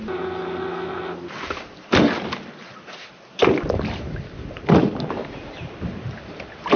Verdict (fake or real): real